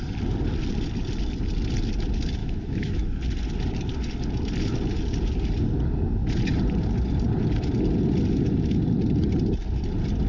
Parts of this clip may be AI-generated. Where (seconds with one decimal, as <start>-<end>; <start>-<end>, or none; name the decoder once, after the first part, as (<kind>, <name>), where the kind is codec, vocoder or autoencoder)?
2.4-3.2 (autoencoder, DAC-VAE)